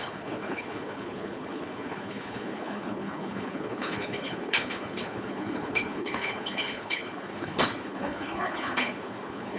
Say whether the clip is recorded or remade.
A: remade